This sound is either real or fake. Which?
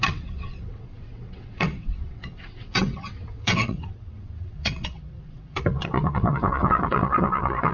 fake